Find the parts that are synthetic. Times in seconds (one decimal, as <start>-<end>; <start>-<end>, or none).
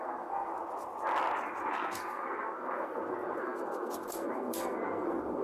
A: 0.0-0.5; 1.7-5.4